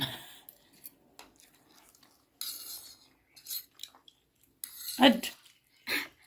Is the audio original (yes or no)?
yes